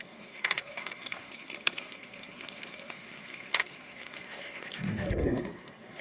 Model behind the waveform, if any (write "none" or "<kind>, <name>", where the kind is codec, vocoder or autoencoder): codec, SNAC